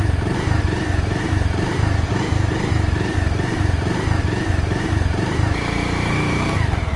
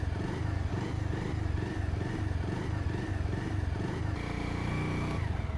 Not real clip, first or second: first